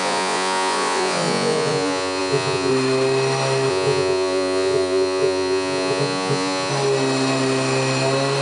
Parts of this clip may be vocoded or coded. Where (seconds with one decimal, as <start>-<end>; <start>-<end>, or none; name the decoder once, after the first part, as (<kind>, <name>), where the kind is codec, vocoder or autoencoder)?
0.0-2.7 (vocoder, Vocos); 3.7-6.7